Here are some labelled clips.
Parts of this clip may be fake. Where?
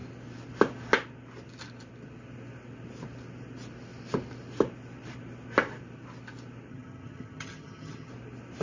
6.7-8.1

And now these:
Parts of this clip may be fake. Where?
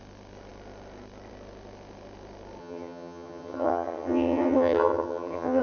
2.6-5.6